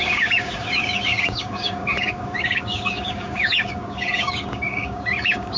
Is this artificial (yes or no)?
yes